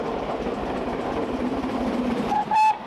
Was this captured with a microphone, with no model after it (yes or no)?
yes